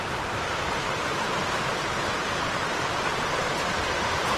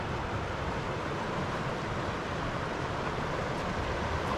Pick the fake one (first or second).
first